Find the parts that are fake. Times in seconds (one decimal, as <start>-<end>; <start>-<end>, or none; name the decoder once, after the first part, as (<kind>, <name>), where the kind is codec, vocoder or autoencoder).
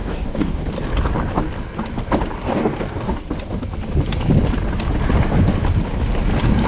0.0-0.6 (codec, DAC); 2.5-3.2